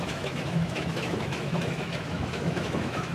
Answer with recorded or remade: remade